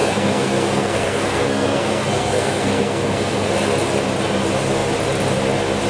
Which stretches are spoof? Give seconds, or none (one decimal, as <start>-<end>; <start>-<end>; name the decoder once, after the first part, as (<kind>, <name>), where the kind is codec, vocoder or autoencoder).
0.0-3.5 (codec, SNAC)